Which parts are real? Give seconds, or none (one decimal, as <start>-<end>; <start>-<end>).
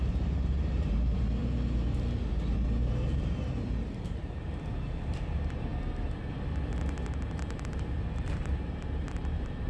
5.7-7.1